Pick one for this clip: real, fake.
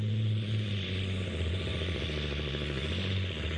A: fake